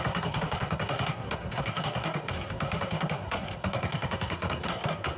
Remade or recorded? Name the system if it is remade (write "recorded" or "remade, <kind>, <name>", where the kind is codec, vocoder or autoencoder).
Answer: remade, codec, SNAC